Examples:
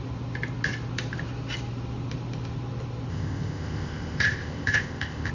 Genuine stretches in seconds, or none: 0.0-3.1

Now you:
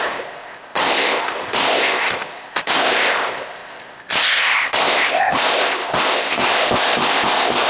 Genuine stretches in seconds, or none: none

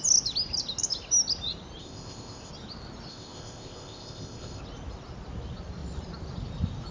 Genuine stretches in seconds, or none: 0.0-1.8; 2.5-3.1; 4.6-6.9

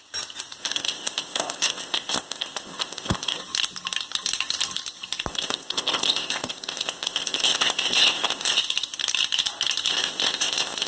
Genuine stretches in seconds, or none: 0.0-0.6; 3.4-5.3; 8.6-9.9

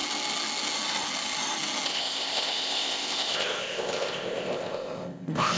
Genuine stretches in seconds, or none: 0.0-1.9

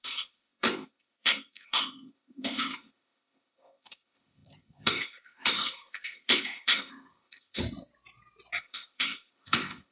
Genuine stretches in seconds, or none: 7.6-8.6

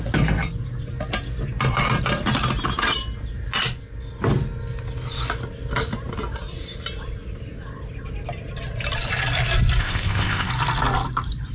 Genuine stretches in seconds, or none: 0.0-9.8; 10.5-11.5

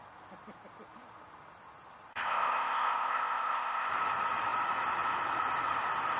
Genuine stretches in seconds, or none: 0.0-2.1; 3.9-6.2